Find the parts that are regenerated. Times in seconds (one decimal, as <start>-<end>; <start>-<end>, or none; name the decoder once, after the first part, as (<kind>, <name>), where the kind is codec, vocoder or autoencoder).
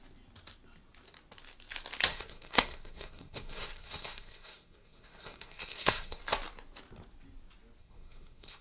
2.1-6.2 (codec, SNAC); 7.8-8.6